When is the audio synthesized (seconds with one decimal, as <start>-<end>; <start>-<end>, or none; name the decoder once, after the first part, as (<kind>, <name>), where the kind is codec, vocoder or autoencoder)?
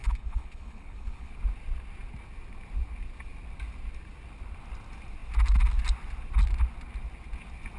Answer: 0.0-1.3 (codec, HILCodec)